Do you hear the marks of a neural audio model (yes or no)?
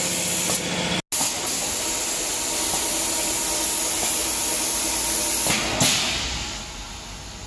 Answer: no